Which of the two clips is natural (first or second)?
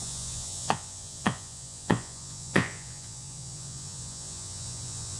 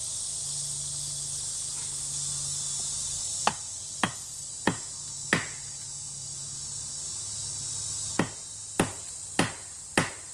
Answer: second